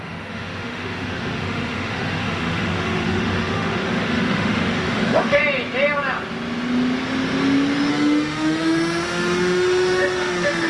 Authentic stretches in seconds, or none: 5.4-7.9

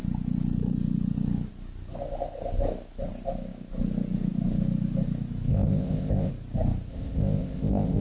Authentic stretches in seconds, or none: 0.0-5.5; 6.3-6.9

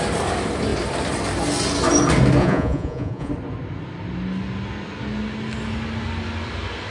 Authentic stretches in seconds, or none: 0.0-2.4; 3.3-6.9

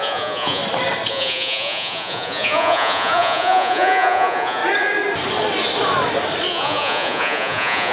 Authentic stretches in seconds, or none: 0.6-1.1; 4.6-6.5

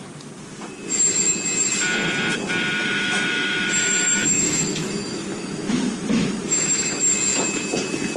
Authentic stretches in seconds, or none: 0.0-2.8; 7.0-8.2

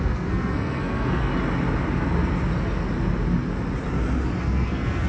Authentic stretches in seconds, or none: 1.3-4.4

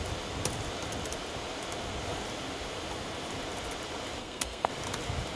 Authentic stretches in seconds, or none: 0.0-4.2; 4.7-5.4